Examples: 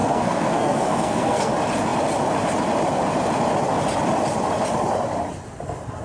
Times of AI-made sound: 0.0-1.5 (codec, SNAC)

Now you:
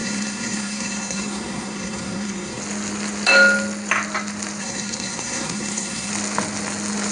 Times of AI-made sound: 0.0-2.6 (codec, SNAC); 4.6-6.1

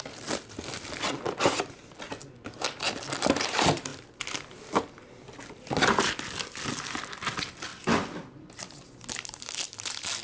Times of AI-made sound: none

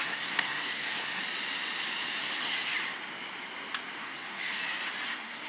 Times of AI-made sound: 0.0-1.2 (codec, SNAC); 2.2-2.7; 4.0-4.6; 5.1-5.5

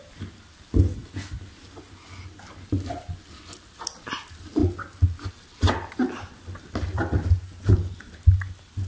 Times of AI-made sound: none

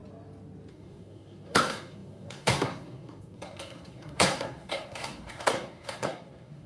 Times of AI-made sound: 0.7-6.7 (codec, SNAC)

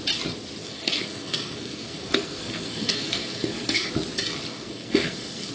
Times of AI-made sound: 0.6-3.9 (codec, SNAC); 4.5-5.5